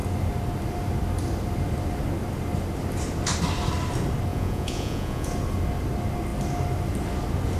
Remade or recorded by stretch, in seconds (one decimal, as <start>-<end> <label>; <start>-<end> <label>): 0.0-4.3 recorded; 4.3-5.3 remade; 5.3-7.6 recorded